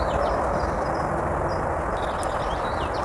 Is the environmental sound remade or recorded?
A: recorded